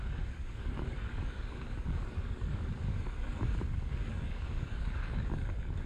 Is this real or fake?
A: fake